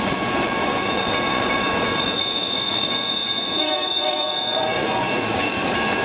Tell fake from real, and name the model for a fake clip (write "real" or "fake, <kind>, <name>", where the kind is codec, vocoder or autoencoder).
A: fake, vocoder, Vocos